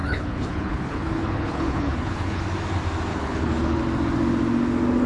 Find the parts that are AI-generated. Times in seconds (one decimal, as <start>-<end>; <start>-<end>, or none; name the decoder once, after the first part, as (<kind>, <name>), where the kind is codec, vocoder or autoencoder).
0.0-2.4 (codec, HILCodec); 3.1-3.8